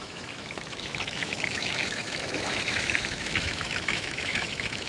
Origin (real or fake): fake